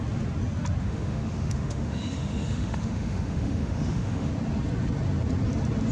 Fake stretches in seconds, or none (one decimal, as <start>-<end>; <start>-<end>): 0.8-4.3